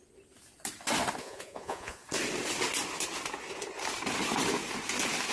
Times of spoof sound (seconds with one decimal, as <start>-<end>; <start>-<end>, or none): 1.2-2.0